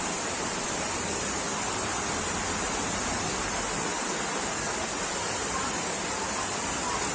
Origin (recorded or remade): remade